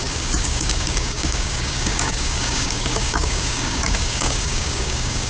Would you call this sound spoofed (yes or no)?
yes